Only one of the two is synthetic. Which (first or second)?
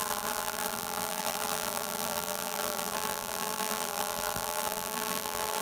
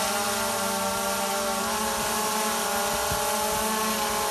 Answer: first